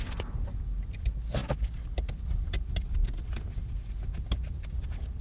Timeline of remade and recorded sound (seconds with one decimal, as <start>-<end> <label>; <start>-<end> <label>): 0.0-5.2 recorded